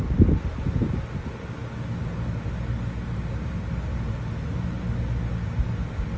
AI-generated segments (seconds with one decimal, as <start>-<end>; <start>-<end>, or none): none